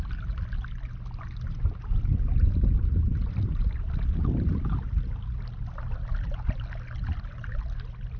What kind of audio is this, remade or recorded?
recorded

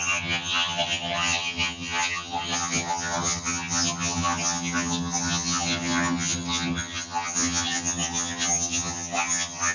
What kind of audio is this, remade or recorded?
remade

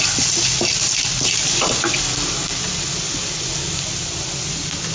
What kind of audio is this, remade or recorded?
recorded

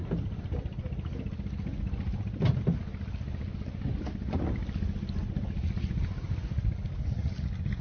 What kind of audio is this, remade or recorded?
recorded